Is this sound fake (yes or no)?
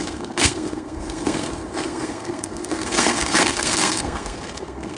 yes